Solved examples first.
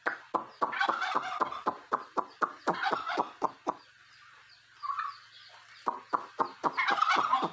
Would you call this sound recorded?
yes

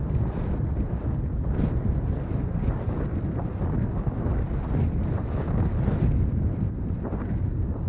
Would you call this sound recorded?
yes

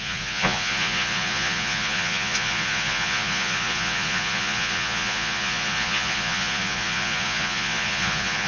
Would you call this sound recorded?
no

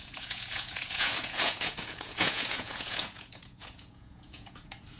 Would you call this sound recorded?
no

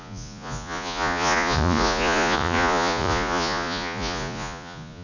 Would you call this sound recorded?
no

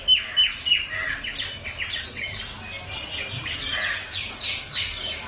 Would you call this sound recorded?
yes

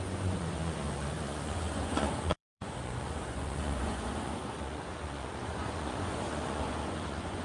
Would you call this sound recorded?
no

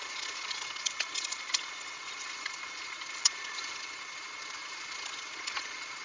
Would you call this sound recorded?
no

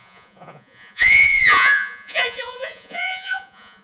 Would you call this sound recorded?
no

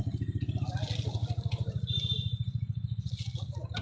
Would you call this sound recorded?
yes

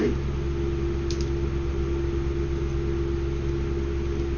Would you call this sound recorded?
yes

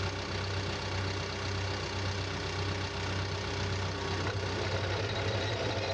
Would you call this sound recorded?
yes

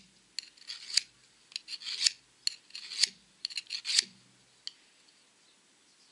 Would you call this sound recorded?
yes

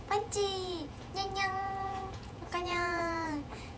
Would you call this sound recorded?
no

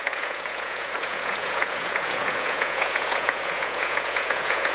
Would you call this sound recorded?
no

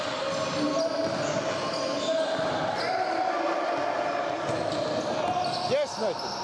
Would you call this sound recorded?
yes